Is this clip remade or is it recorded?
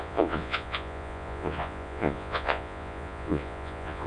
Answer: remade